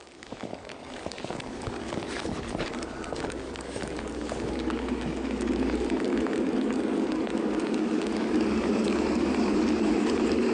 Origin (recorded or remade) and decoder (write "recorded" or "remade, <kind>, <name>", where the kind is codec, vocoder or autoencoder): remade, codec, DAC